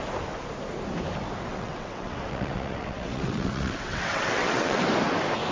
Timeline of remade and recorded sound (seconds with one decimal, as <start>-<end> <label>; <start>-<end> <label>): 0.0-1.5 recorded; 1.5-4.8 remade; 4.8-5.5 recorded